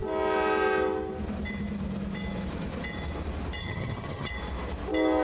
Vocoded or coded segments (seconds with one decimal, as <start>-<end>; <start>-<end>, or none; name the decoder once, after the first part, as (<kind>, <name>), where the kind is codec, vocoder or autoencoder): 3.6-4.3 (vocoder, HiFi-GAN)